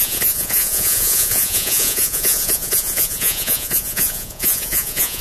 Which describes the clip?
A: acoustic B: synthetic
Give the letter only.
B